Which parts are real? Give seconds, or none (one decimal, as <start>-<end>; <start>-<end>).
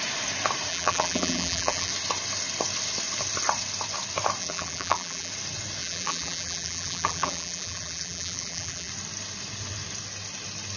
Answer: 0.0-0.7; 1.9-4.4; 5.3-5.8; 8.9-10.8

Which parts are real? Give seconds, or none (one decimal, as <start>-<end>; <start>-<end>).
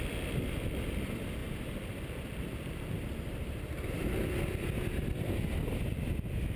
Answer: 0.0-6.6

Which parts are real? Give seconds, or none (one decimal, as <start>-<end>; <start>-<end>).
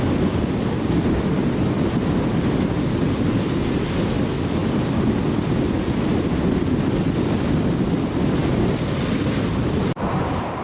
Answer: 0.0-4.6; 5.5-10.6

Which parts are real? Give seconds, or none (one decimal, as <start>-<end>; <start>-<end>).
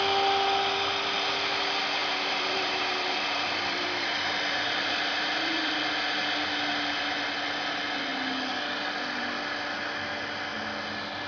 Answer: 0.0-2.0; 5.8-11.3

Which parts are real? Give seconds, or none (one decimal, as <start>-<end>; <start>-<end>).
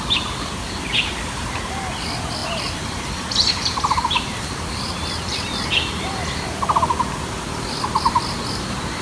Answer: 0.0-2.4; 6.5-9.0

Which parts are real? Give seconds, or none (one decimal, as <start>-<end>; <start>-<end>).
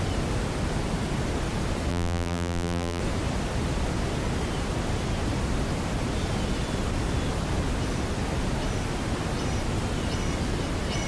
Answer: 0.0-1.9; 3.0-11.1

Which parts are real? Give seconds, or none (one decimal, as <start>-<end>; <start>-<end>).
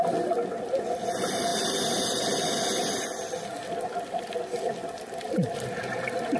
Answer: 0.0-1.5; 2.6-4.8; 5.7-6.4